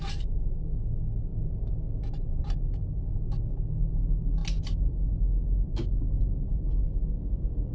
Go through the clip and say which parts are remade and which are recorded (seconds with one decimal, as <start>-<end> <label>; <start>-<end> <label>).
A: 0.0-7.7 recorded